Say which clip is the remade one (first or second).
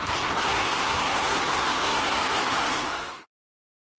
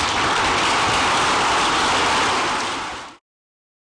first